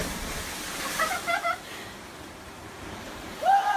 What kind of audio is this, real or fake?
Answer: fake